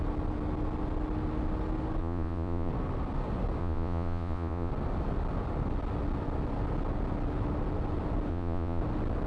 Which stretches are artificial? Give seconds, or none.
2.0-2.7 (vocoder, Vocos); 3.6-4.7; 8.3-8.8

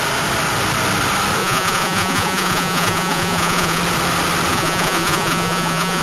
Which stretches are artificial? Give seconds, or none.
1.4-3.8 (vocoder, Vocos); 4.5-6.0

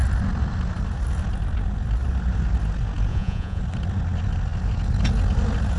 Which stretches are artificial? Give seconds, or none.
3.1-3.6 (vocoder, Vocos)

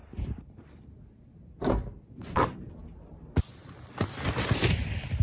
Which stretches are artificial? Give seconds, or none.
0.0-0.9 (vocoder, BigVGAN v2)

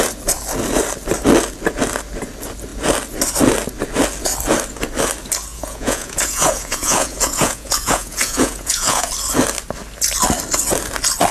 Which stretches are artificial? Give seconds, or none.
5.5-9.1 (vocoder, Vocos)

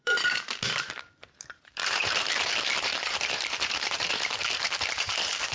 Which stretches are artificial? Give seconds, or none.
0.0-5.5 (vocoder, BigVGAN v2)

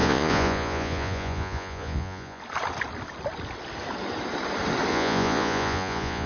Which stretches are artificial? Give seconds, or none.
0.0-2.4 (vocoder, Vocos); 4.9-6.3

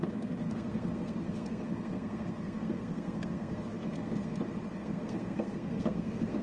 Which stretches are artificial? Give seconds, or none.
0.0-4.3 (codec, SNAC); 4.8-6.4